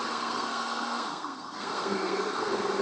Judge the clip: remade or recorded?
remade